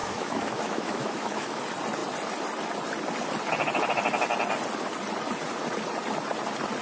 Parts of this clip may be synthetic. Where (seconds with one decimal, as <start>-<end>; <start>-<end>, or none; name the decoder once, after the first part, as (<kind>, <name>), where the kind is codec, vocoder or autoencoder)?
0.0-1.6 (autoencoder, DAC-VAE)